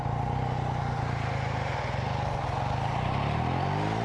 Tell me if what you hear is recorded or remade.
recorded